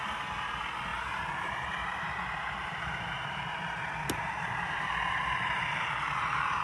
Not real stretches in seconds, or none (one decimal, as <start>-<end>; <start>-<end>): 0.9-4.9